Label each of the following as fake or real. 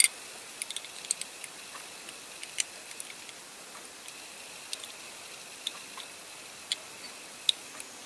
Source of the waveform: real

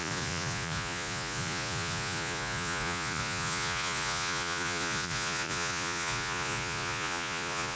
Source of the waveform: fake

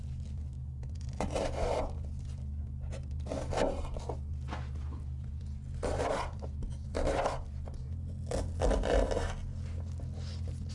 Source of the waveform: real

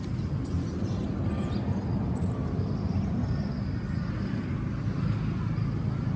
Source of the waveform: real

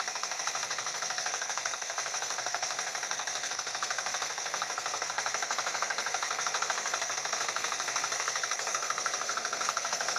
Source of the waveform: fake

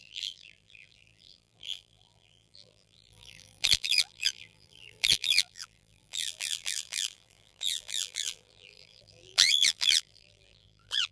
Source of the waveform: fake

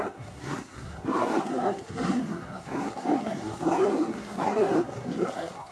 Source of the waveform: fake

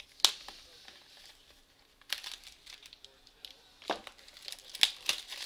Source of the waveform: real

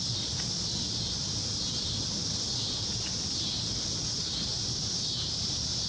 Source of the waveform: real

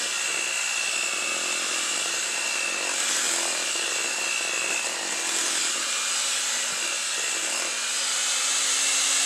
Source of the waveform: real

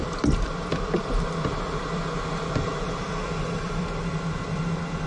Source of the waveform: fake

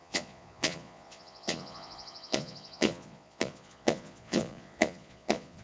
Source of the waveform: fake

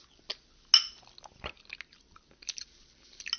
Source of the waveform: real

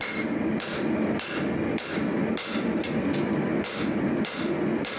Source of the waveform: fake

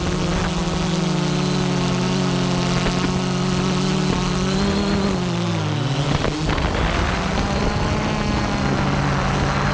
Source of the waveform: real